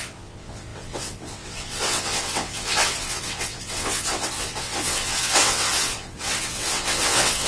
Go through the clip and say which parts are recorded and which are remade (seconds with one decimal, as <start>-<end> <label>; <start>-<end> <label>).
0.0-7.5 remade